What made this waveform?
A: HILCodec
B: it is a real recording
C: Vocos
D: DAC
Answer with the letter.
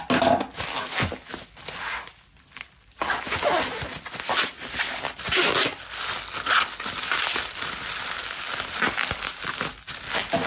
B